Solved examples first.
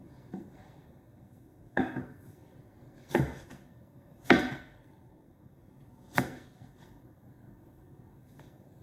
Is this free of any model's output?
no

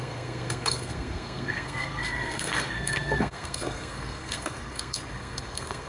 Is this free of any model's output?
no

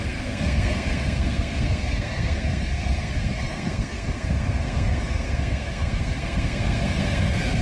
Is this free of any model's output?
no